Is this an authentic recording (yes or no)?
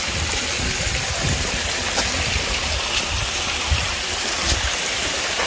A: yes